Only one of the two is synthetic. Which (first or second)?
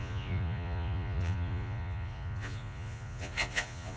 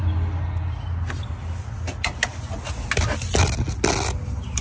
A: first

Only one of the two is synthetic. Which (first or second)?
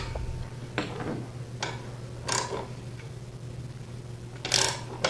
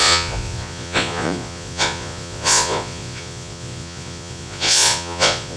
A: second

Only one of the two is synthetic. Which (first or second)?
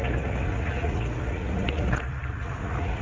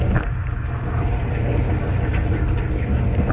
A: first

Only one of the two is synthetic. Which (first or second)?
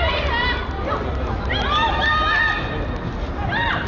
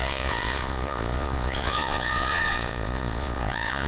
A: second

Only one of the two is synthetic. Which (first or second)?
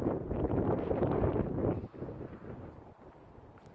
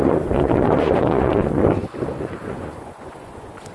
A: second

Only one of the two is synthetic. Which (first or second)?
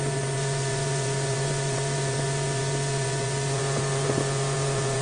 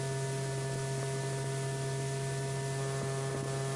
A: first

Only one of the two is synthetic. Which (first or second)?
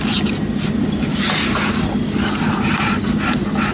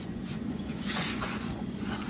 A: second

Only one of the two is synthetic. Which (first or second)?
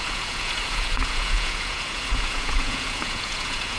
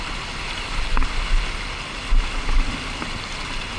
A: first